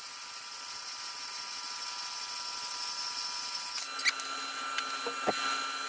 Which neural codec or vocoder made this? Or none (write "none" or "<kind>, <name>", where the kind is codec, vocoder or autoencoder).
none